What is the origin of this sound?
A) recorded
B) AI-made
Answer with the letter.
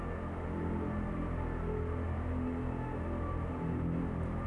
A